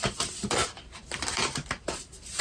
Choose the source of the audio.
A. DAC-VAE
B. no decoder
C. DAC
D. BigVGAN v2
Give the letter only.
D